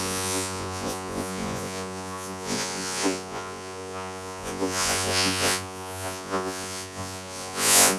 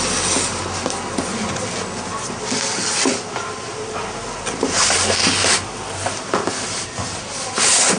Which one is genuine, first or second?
second